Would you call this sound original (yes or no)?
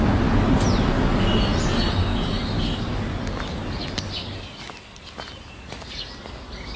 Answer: yes